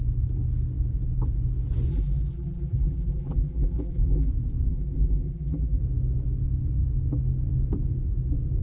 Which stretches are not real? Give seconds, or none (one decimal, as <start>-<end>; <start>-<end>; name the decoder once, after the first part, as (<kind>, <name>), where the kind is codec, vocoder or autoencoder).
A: 1.9-4.3 (vocoder, BigVGAN v2); 4.7-5.8